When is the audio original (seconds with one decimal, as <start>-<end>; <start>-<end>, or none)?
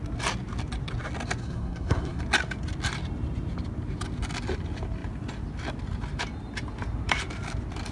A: 0.0-1.4; 2.2-7.9